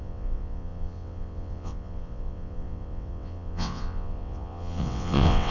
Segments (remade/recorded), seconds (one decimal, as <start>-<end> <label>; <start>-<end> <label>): 0.0-5.5 remade